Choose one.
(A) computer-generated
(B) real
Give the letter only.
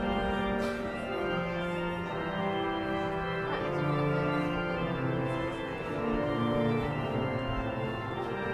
A